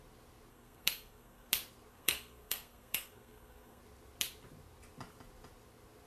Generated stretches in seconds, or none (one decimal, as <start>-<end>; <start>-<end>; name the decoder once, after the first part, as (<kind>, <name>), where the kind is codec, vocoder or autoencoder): 0.5-1.5 (codec, SNAC); 1.9-3.8